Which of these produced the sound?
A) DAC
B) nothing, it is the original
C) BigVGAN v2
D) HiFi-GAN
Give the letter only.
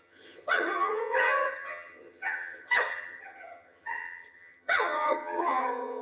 D